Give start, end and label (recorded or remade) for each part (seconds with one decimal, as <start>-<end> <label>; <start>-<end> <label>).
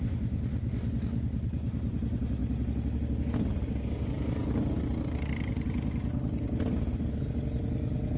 0.0-8.2 recorded